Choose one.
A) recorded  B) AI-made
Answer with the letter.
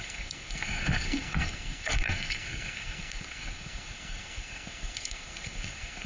B